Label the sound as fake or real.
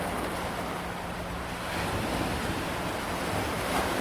real